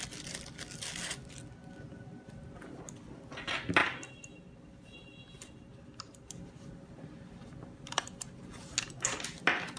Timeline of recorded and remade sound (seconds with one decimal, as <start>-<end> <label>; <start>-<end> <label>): 0.0-9.8 recorded